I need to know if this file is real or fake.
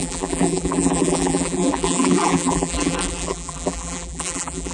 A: fake